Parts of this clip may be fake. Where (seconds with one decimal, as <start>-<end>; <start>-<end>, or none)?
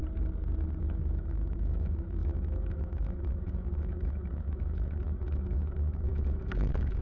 0.8-7.0